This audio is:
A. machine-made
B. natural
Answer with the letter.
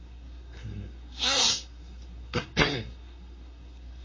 A